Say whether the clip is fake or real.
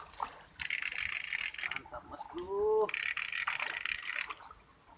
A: real